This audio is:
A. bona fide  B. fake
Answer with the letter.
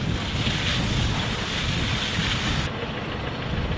A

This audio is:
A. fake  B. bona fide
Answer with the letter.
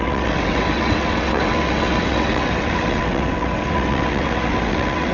A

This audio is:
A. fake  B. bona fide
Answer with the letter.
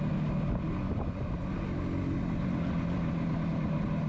B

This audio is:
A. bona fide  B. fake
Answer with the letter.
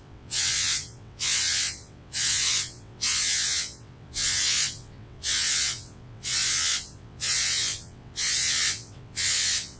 B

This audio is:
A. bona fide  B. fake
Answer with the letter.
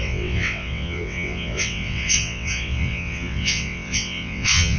B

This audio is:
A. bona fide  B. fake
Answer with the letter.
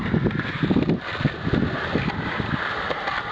A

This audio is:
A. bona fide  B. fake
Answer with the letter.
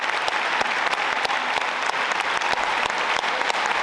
A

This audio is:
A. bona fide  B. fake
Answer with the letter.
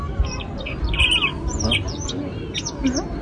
A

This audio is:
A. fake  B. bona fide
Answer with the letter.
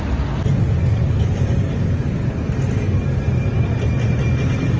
B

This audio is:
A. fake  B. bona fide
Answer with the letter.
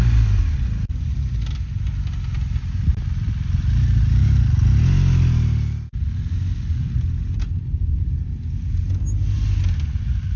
B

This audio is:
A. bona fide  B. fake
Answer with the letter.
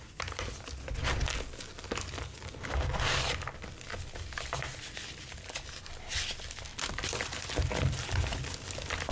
A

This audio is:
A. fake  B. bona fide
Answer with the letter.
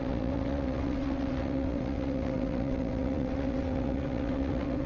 A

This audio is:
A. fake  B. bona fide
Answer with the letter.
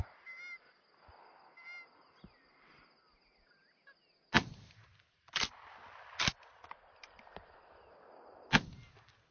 B